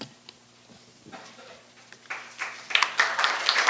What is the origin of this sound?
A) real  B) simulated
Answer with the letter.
A